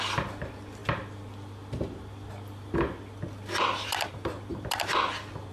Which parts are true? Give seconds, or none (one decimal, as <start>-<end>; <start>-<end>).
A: 0.0-5.5